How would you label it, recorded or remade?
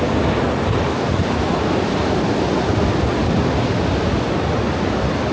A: recorded